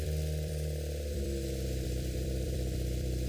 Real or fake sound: fake